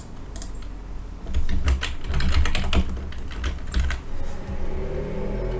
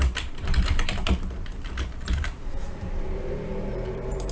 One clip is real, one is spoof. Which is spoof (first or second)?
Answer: second